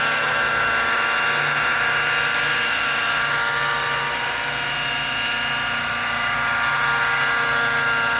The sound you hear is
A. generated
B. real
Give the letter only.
B